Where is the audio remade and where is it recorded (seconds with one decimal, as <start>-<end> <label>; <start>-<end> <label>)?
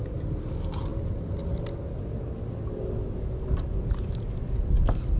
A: 0.0-5.2 recorded